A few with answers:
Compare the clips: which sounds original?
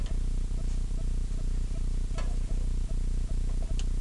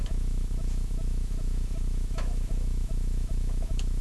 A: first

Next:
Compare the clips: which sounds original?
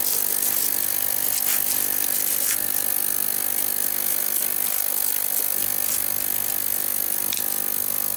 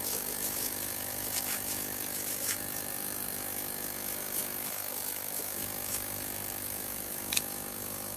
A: first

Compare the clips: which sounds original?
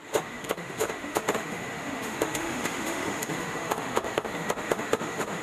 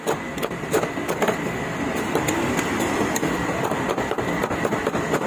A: second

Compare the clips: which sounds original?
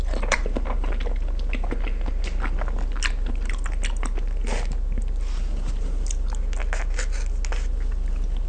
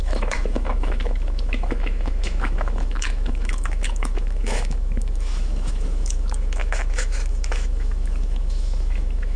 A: first